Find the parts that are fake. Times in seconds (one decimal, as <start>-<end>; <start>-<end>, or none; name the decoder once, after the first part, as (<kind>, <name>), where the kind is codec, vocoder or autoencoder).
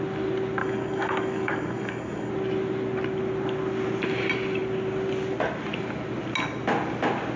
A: 0.6-2.3 (codec, DAC)